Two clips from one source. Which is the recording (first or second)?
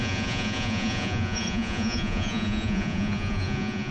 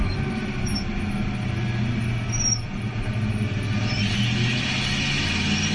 second